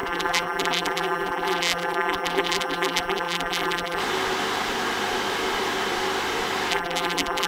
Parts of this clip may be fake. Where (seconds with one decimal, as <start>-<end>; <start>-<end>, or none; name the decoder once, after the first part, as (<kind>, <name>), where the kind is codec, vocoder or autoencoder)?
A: 0.0-4.0 (vocoder, BigVGAN v2); 6.7-7.5